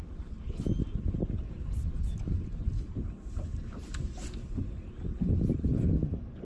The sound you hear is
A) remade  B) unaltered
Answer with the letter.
B